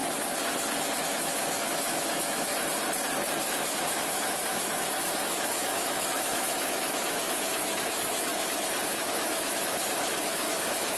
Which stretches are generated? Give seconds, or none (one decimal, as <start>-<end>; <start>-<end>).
1.0-2.5; 3.4-11.0